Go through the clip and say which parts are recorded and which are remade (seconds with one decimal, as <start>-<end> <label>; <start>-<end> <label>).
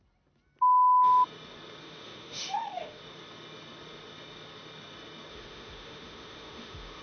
0.0-1.8 recorded; 1.8-3.0 remade; 3.0-5.3 recorded; 5.3-7.0 remade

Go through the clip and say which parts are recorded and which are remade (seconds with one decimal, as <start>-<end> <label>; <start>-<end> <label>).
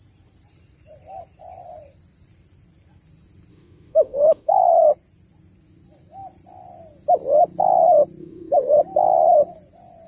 0.0-3.5 recorded; 3.5-4.6 remade; 4.6-8.2 recorded; 8.2-8.8 remade; 8.8-10.1 recorded